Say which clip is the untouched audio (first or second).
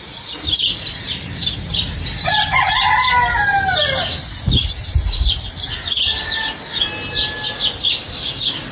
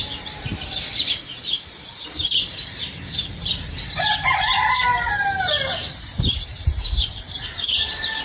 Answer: first